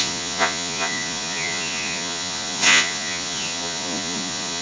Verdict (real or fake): fake